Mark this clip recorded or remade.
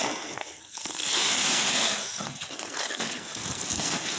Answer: remade